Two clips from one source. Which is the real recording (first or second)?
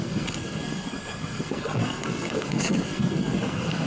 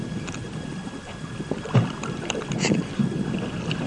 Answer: second